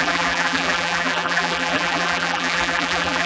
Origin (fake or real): fake